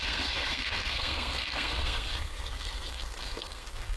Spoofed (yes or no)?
yes